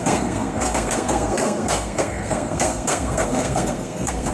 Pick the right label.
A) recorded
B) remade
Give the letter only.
B